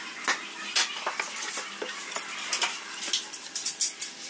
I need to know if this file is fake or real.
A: real